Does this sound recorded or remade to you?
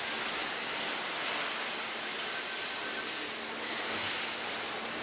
recorded